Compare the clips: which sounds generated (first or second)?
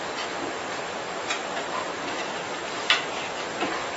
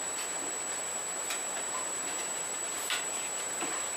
second